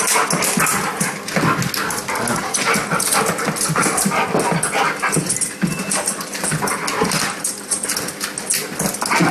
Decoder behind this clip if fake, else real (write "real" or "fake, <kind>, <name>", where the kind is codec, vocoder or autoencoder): real